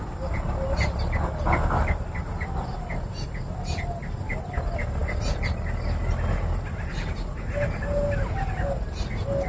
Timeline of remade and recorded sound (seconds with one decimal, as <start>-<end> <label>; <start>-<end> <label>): 0.0-9.5 recorded